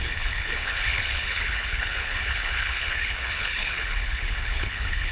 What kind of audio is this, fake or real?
fake